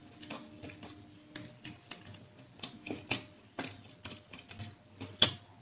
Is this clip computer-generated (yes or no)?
no